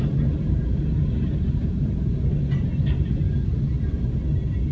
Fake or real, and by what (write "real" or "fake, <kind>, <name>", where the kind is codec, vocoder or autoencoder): real